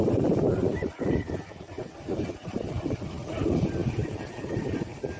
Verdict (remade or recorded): remade